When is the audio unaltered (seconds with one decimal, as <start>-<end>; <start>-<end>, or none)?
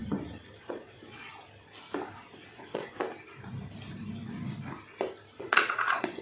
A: 0.0-0.6; 1.3-2.5; 2.9-5.4